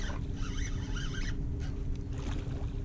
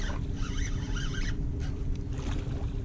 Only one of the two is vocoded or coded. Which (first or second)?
second